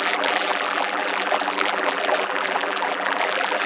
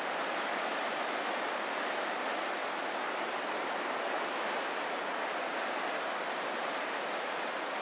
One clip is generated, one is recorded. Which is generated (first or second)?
first